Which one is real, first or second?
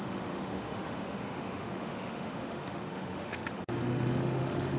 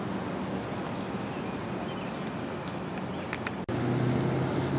second